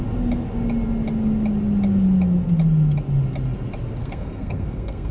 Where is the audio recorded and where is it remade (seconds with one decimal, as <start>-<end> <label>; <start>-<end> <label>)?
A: 0.0-4.0 recorded; 4.0-5.1 remade